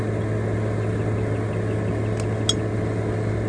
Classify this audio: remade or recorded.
recorded